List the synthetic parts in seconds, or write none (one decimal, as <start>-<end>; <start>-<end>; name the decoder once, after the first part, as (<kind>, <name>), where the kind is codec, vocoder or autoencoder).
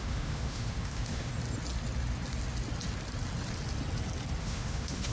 0.0-1.3 (autoencoder, DAC-VAE); 4.4-5.1